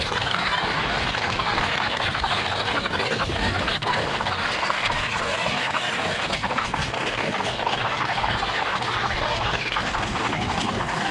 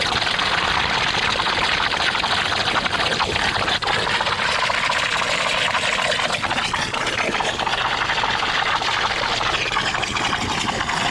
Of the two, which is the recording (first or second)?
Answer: second